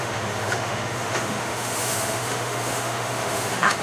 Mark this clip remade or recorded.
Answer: remade